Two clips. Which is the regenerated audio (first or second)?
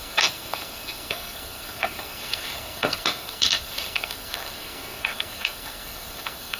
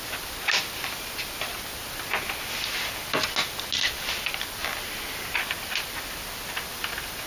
first